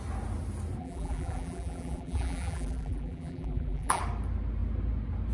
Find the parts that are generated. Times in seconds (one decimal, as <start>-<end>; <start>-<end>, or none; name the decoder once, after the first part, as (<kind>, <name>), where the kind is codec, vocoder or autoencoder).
0.8-4.0 (vocoder, BigVGAN v2)